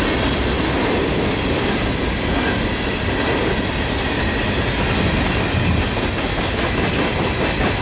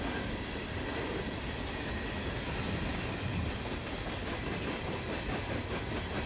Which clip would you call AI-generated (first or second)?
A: second